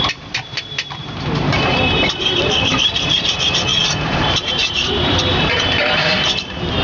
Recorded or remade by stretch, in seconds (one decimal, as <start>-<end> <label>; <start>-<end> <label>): 0.0-6.8 remade